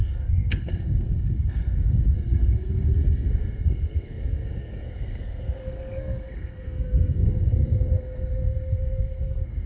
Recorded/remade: remade